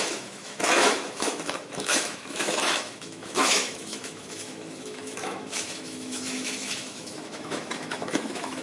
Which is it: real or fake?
fake